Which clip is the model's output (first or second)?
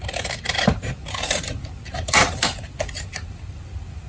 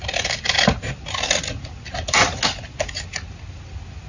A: first